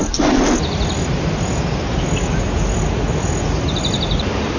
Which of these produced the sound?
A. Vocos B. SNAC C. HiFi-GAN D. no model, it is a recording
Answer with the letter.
D